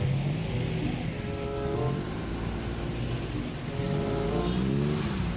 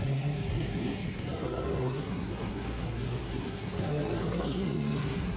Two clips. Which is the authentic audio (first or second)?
first